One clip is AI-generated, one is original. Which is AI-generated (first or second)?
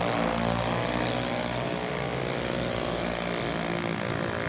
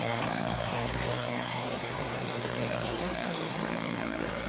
second